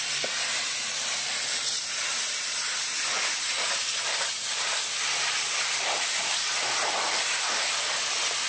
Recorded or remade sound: recorded